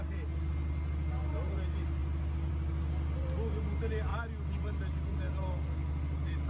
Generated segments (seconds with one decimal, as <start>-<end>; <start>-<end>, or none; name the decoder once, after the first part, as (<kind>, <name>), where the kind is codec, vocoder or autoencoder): none